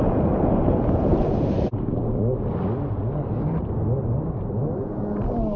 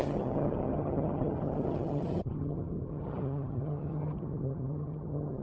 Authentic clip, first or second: first